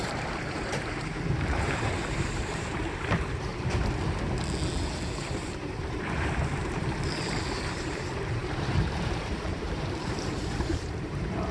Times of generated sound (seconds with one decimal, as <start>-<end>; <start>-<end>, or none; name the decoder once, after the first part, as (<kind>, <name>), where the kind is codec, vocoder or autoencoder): 0.0-3.5 (vocoder, BigVGAN v2); 5.2-11.5